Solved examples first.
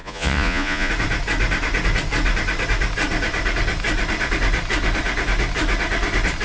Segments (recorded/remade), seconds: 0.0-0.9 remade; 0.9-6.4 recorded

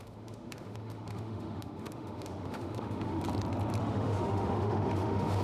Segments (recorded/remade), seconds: 0.0-3.2 remade; 3.2-3.8 recorded; 3.8-5.4 remade